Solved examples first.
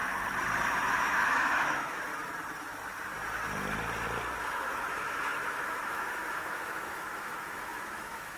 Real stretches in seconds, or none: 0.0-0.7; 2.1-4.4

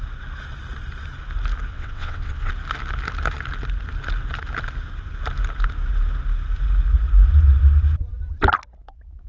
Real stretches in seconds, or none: 0.0-1.7; 2.5-9.3

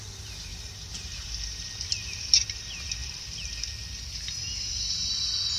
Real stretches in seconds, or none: 0.0-0.5; 1.7-5.6

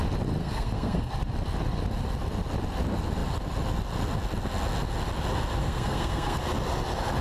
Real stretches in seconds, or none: 0.0-0.4; 1.1-5.6; 6.4-7.2

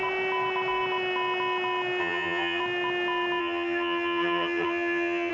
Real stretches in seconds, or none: 0.0-2.0; 2.6-3.4

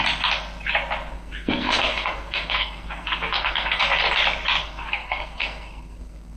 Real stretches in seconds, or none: 0.0-1.1; 3.8-4.6

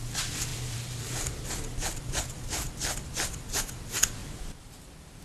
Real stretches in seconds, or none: 0.0-0.5; 2.7-4.2; 4.7-5.2

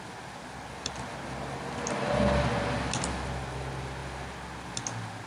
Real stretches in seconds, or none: 0.0-5.3